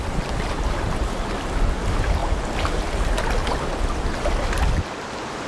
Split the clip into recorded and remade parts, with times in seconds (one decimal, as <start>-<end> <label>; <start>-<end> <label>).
0.0-5.5 recorded